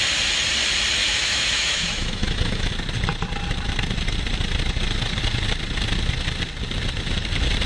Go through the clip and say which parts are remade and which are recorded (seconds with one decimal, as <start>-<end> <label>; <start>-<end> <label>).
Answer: 0.0-1.0 recorded; 1.0-2.7 remade; 2.7-7.7 recorded